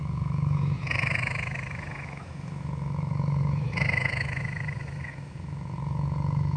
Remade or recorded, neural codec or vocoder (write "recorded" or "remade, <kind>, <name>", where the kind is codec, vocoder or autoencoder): remade, autoencoder, DAC-VAE